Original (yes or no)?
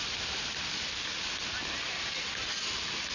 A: yes